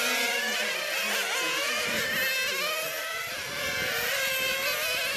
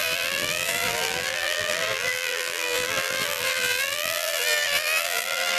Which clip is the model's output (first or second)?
second